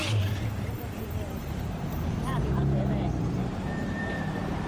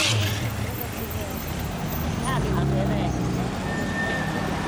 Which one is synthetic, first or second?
first